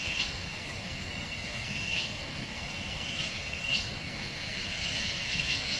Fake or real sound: fake